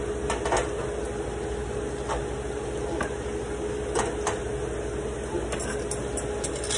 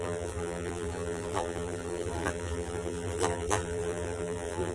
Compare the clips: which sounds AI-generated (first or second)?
second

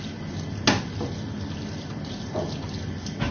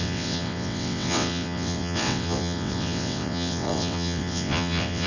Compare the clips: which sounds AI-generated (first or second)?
second